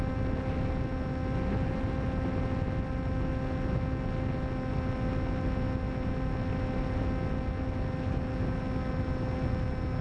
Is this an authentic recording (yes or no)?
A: yes